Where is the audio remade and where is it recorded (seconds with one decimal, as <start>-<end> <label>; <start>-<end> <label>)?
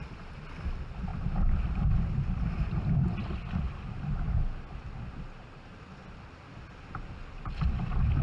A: 0.0-8.2 recorded